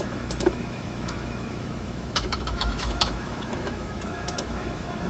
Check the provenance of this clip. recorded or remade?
remade